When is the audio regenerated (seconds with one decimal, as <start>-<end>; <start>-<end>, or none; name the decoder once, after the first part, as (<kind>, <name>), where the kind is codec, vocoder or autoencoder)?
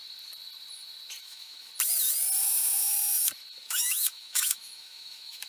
1.2-1.7 (autoencoder, DAC-VAE); 2.4-2.9; 3.5-5.5